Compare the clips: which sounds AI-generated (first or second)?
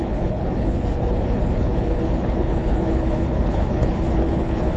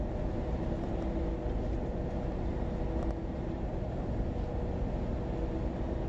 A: first